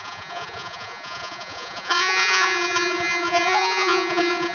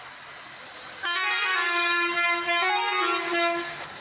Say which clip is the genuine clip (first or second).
second